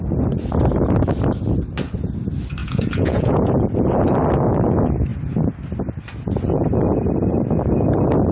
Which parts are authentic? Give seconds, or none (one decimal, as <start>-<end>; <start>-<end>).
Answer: 0.0-2.6; 3.5-8.3

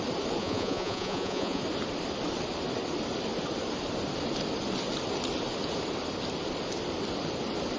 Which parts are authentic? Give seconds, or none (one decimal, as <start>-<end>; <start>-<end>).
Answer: 0.0-0.4; 1.6-7.8

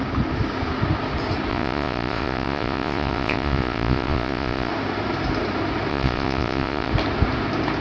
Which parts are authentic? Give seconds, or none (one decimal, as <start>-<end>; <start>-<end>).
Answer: 0.0-1.5; 4.7-5.9; 6.9-7.8

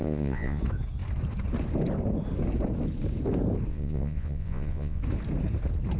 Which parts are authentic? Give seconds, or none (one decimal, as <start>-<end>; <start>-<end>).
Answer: 0.6-3.7; 5.0-6.0

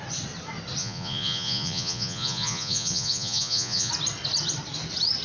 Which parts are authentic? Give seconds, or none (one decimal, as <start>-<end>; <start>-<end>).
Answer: 0.0-0.8; 3.9-5.2

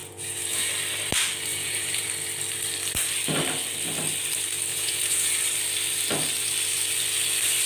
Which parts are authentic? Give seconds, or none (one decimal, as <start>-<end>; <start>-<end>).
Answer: 0.7-1.5; 2.1-4.7; 5.3-7.7

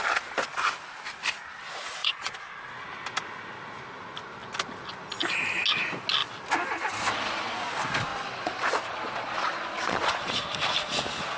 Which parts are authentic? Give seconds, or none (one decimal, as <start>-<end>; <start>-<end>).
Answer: 0.0-2.0; 2.7-8.1; 10.4-11.4

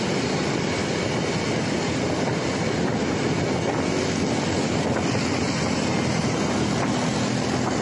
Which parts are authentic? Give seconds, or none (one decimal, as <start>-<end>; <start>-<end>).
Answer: 0.0-7.8